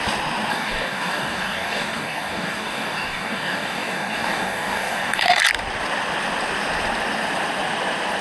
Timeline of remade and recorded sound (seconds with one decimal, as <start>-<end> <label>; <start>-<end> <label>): 0.0-0.5 recorded; 0.5-5.4 remade; 5.4-8.2 recorded